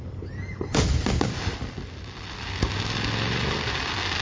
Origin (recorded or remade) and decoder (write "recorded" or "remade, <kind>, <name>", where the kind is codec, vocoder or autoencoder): recorded